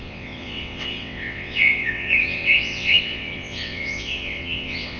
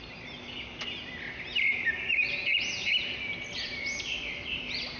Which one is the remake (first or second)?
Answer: first